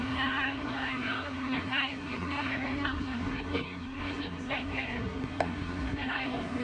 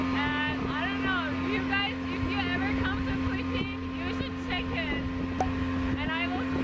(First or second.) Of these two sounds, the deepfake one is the first